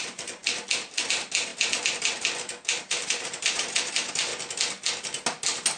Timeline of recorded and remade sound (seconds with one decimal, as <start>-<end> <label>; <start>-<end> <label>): 0.0-1.5 remade; 1.5-2.8 recorded; 2.8-4.3 remade; 4.3-5.8 recorded

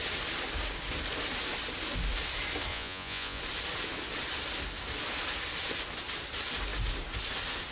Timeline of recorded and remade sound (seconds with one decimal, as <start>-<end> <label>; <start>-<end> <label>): 0.0-2.7 recorded; 2.7-3.4 remade; 3.4-7.7 recorded

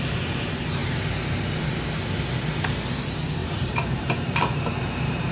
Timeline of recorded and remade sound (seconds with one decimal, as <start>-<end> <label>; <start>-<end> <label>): 0.0-3.4 recorded; 3.4-5.3 remade

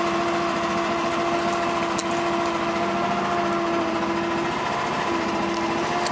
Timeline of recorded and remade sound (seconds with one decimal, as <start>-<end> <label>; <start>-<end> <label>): 0.0-6.1 recorded

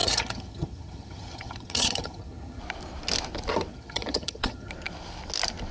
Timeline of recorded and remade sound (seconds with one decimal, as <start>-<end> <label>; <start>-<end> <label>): 0.0-2.6 remade; 2.6-3.7 recorded; 3.7-4.7 remade; 4.7-5.7 recorded

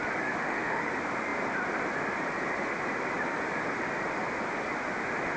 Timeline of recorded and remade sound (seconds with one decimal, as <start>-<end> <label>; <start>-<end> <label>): 0.0-0.4 recorded; 0.4-0.9 remade; 0.9-5.4 recorded

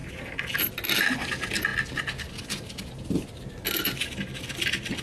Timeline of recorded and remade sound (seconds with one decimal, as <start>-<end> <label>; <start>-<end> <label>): 0.0-5.0 recorded

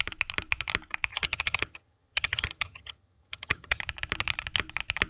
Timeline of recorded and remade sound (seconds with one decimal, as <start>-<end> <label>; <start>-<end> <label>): 0.0-1.1 recorded; 1.1-3.8 remade; 3.8-5.1 recorded